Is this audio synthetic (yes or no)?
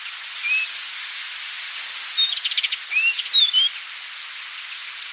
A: no